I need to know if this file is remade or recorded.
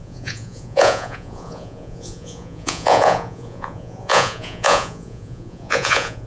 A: remade